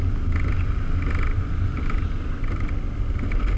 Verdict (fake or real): real